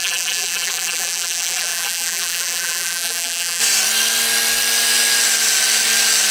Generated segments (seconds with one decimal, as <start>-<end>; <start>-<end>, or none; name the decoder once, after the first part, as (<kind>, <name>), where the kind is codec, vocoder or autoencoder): 0.0-3.6 (vocoder, BigVGAN v2)

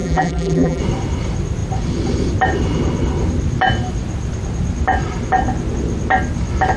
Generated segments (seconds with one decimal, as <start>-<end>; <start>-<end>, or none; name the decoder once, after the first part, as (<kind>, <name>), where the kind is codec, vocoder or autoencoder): 0.0-0.8 (vocoder, BigVGAN v2)

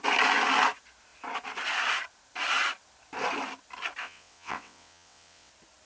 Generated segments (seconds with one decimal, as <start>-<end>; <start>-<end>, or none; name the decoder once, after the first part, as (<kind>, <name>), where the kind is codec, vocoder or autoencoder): 4.0-5.5 (vocoder, WaveNeXt)

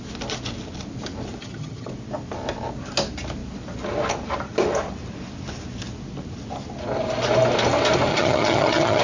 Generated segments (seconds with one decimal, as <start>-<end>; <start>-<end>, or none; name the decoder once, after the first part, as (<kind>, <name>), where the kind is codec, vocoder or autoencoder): 1.4-1.9 (vocoder, HiFi-GAN); 8.1-9.0

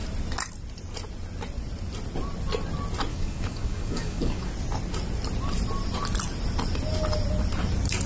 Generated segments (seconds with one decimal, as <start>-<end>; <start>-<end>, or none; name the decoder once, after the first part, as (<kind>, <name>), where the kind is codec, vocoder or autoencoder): 3.1-4.5 (codec, DAC)